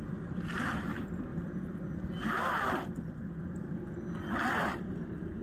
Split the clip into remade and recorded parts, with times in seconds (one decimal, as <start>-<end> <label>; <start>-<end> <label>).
0.0-1.3 remade; 1.3-4.5 recorded; 4.5-5.4 remade

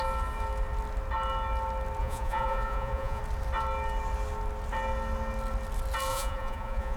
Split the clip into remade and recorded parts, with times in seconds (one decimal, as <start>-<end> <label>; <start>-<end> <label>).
0.0-2.0 recorded; 2.0-3.2 remade; 3.2-6.1 recorded; 6.1-7.0 remade

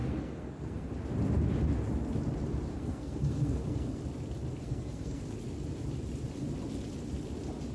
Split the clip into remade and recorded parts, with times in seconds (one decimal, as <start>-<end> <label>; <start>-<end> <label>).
0.0-0.9 remade; 0.9-2.7 recorded; 2.7-4.0 remade; 4.0-4.6 recorded; 4.6-5.2 remade; 5.2-7.7 recorded

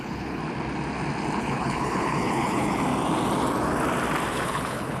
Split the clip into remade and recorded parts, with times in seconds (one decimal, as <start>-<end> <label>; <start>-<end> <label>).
0.0-0.4 remade; 0.4-1.4 recorded; 1.4-2.8 remade; 2.8-4.3 recorded; 4.3-5.0 remade

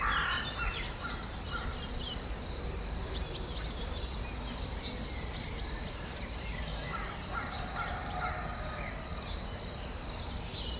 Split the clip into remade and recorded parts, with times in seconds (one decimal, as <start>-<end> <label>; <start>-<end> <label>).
0.0-10.8 recorded

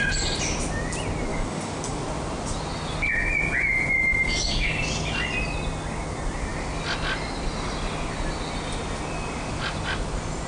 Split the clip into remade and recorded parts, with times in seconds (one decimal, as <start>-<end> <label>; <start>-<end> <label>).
0.0-1.3 recorded; 1.3-2.0 remade; 2.0-4.1 recorded; 4.1-4.7 remade; 4.7-10.5 recorded

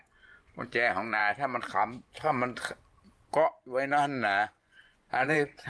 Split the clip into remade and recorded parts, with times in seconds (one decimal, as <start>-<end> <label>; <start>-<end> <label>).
0.0-1.2 remade; 1.2-4.6 recorded; 4.6-5.7 remade

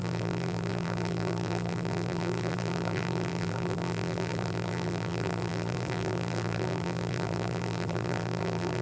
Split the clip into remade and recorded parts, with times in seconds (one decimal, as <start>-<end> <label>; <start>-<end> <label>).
0.0-8.8 remade